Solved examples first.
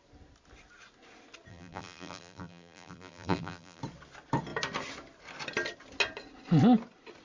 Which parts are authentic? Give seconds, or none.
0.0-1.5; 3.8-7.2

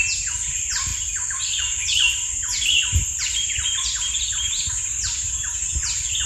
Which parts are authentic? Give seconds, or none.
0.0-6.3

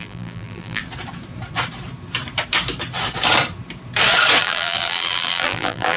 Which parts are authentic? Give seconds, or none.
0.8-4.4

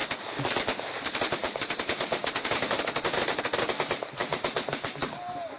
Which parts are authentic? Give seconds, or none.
3.4-4.2

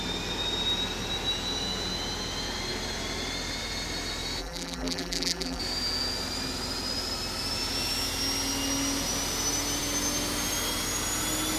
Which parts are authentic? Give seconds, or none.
0.0-4.4; 5.6-11.6

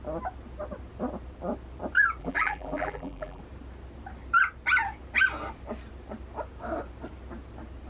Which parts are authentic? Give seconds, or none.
0.0-2.2; 3.4-7.9

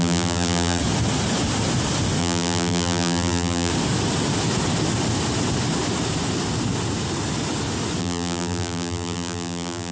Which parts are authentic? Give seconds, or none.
0.8-2.2; 3.7-8.0

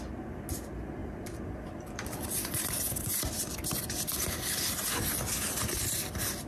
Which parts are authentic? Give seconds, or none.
0.0-1.0; 4.9-6.5